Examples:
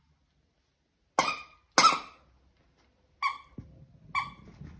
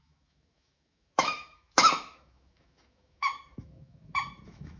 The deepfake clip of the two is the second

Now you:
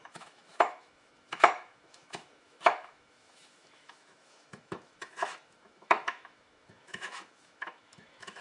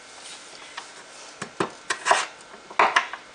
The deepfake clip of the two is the first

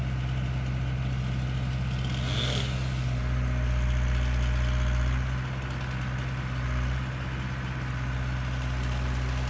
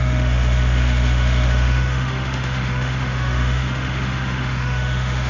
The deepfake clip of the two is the second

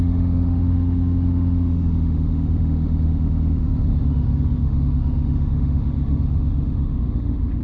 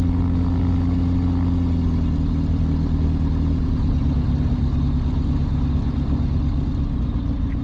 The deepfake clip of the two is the first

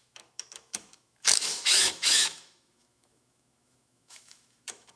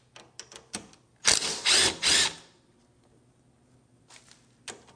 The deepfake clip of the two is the first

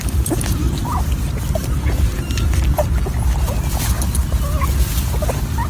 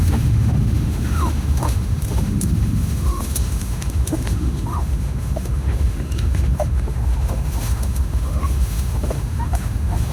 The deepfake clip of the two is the second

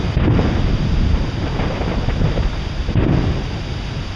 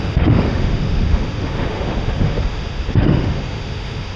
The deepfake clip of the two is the second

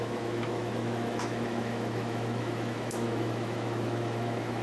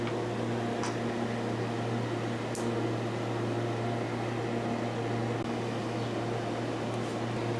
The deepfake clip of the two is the first